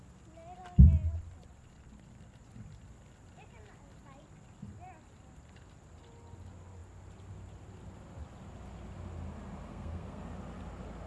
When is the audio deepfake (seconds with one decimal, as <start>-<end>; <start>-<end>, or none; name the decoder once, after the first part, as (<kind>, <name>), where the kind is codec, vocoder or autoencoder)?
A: 9.7-10.2 (codec, SNAC)